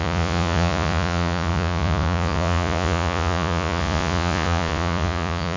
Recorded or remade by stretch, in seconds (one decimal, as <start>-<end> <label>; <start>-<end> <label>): 0.0-5.6 remade

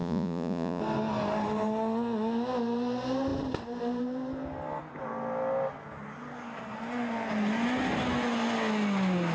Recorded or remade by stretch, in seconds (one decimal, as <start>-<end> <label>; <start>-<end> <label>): 0.0-0.8 remade; 0.8-9.3 recorded

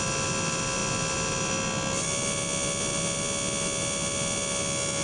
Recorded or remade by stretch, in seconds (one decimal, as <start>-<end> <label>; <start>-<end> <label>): 0.0-5.0 recorded

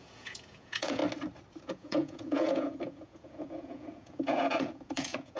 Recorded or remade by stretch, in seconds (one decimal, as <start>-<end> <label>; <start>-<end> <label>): 0.0-1.0 remade; 1.0-1.6 recorded; 1.6-5.4 remade

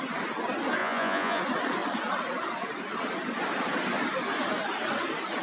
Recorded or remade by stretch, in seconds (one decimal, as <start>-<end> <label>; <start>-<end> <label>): 0.0-0.8 recorded; 0.8-1.4 remade; 1.4-5.4 recorded

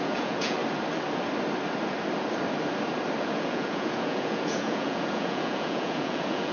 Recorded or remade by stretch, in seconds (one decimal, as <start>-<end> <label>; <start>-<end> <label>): 0.0-0.6 remade; 0.6-3.2 recorded; 3.2-6.5 remade